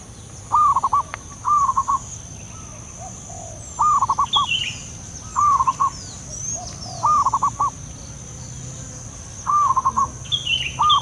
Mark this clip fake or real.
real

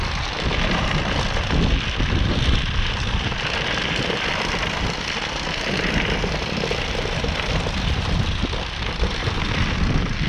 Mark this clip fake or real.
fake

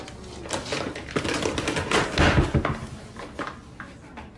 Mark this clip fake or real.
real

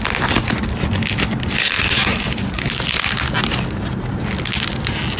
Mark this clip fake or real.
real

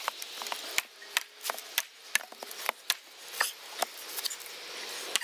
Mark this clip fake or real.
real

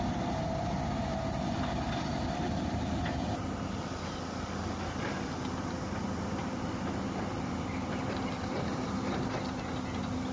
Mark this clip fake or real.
real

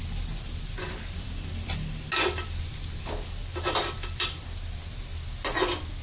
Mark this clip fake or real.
real